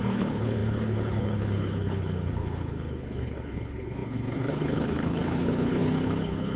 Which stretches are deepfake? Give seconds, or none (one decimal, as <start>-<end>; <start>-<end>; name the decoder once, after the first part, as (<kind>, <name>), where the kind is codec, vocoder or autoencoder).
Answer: 0.0-6.6 (codec, HILCodec)